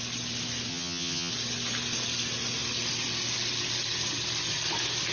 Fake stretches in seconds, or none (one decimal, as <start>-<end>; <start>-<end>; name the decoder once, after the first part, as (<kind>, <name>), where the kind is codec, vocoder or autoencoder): 0.7-1.3 (vocoder, HiFi-GAN)